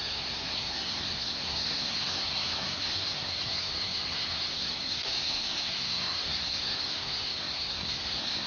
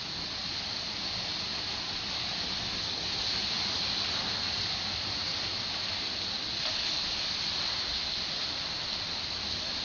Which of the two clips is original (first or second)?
second